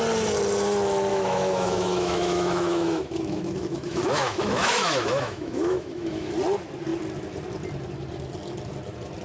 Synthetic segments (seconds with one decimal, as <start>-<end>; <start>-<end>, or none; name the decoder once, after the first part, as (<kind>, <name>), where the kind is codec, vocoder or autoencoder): 1.1-6.3 (autoencoder, DAC-VAE)